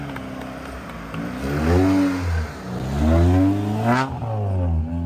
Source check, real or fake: real